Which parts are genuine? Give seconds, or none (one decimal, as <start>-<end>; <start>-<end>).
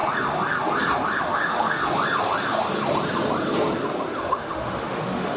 0.0-1.2; 1.8-4.2